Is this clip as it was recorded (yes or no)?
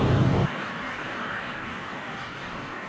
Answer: no